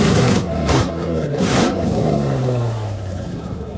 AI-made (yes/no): yes